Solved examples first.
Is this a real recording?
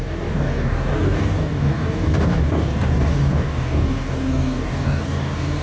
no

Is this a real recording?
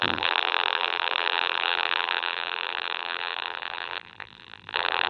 no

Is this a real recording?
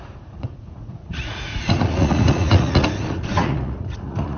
no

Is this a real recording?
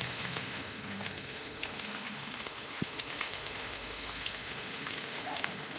no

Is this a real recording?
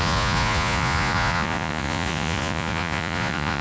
no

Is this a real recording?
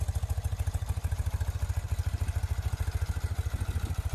yes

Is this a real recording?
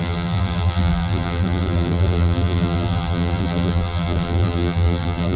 no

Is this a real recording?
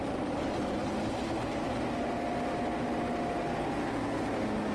yes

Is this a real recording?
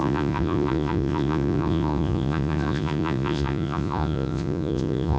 no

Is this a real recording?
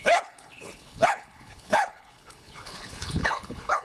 no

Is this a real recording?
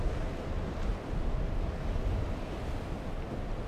yes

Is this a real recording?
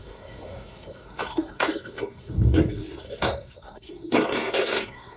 no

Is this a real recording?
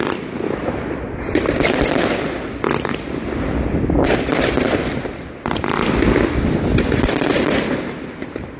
no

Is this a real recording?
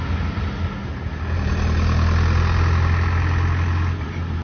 yes